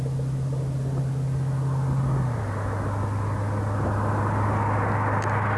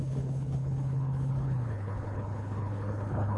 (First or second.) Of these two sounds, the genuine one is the first